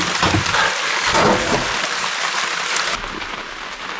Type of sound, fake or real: real